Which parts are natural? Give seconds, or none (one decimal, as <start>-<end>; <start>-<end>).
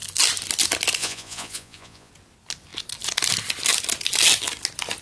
0.0-1.0; 2.1-5.0